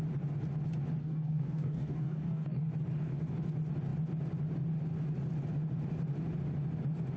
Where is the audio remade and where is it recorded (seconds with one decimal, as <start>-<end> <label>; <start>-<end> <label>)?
0.0-1.0 recorded; 1.0-2.7 remade; 2.7-7.2 recorded